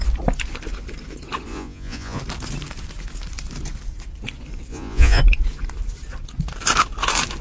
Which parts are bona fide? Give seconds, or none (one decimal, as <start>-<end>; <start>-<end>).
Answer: 0.0-1.5; 2.2-4.7; 5.2-7.4